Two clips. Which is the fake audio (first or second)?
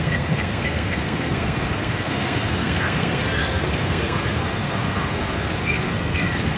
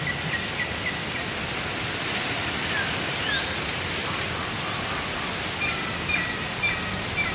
first